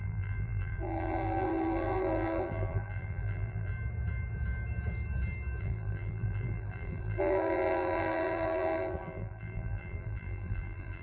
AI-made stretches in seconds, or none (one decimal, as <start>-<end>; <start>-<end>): 0.0-3.7; 5.6-11.0